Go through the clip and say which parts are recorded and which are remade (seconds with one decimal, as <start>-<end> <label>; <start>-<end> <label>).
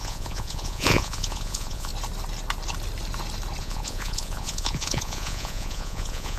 0.0-1.9 remade; 1.9-3.6 recorded; 3.6-6.4 remade